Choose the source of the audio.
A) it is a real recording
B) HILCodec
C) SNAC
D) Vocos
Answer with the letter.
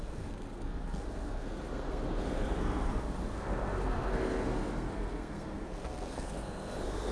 C